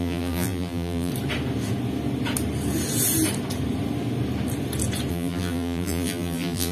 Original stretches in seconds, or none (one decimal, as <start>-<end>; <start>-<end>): 1.1-5.1